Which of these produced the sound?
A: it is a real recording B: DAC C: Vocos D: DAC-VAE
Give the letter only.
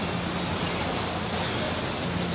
A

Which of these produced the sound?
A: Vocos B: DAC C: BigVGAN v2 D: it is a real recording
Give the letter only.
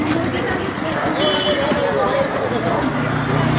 D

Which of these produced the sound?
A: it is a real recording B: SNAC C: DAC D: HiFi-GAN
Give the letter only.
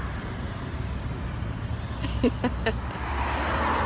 A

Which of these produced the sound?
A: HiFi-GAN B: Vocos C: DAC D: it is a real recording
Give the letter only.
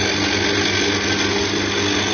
D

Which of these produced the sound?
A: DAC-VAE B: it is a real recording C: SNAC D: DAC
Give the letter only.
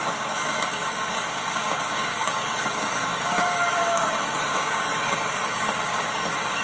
D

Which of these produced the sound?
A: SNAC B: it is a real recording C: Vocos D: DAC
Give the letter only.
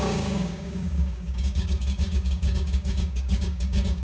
D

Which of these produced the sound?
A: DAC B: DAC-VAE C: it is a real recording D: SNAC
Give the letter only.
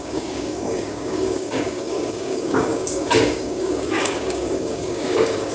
A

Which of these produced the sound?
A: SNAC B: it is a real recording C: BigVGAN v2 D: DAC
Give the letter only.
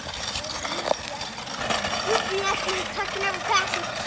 B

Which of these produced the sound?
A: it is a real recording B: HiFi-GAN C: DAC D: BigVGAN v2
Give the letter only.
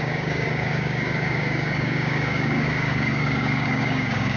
C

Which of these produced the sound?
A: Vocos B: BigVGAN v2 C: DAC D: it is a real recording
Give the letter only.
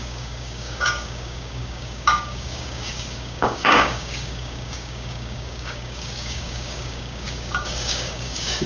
C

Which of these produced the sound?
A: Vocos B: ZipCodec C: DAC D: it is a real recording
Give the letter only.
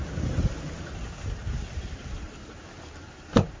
D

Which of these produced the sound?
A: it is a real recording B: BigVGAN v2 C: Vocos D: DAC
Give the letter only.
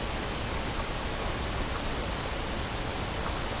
A